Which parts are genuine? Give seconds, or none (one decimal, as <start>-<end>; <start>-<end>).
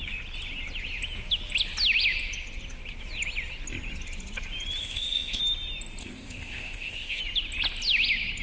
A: 0.0-4.8; 5.4-6.0; 7.2-8.4